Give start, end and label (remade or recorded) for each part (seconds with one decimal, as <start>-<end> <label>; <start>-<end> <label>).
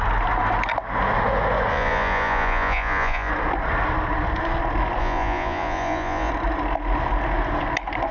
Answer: 0.0-1.7 recorded; 1.7-3.3 remade; 3.3-5.0 recorded; 5.0-6.3 remade; 6.3-8.1 recorded